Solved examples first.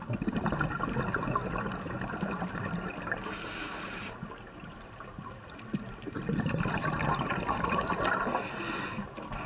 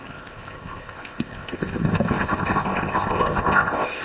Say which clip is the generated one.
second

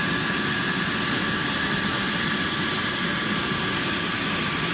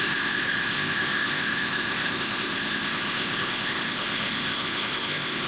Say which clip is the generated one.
second